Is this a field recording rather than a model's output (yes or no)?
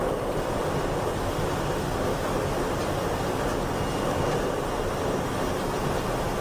yes